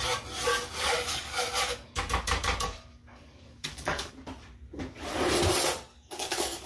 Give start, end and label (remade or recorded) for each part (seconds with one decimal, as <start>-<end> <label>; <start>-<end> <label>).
0.0-0.5 recorded; 0.5-4.1 remade; 4.1-5.9 recorded; 5.9-6.7 remade